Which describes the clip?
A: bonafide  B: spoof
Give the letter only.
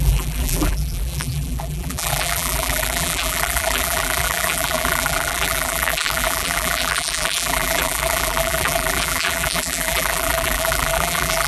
B